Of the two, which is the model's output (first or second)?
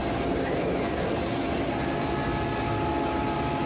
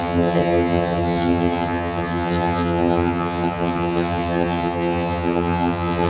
second